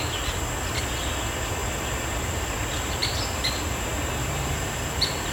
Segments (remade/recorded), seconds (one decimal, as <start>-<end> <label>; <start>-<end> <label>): 0.0-3.0 recorded; 3.0-3.6 remade; 3.6-4.2 recorded; 4.2-4.8 remade; 4.8-5.3 recorded